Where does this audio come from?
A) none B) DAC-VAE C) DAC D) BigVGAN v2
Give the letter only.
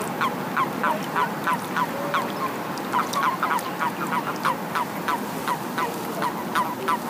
A